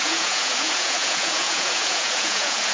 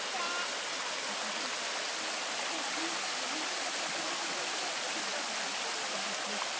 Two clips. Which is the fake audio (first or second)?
first